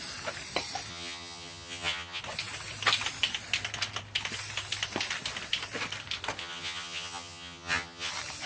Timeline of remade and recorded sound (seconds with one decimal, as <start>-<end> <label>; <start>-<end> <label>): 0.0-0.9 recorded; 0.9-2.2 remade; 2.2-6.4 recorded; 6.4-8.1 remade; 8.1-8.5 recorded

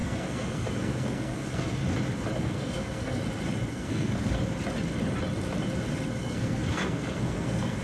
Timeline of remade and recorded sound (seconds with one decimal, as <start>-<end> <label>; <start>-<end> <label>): 0.0-1.8 remade; 1.8-2.4 recorded; 2.4-3.2 remade; 3.2-3.7 recorded; 3.7-4.4 remade; 4.4-6.2 recorded; 6.2-7.8 remade

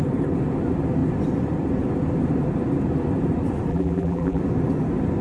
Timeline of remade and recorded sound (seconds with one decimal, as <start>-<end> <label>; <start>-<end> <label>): 0.0-3.7 recorded; 3.7-4.4 remade; 4.4-5.2 recorded

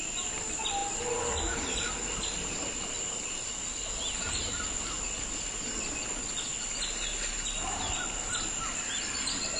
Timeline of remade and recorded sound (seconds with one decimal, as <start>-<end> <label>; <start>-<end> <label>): 0.0-9.6 recorded